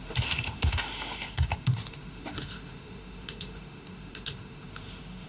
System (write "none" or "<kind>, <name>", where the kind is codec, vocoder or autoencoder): autoencoder, DAC-VAE